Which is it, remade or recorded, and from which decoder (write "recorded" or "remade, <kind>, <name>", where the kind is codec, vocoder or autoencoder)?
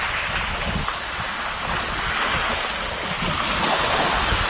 recorded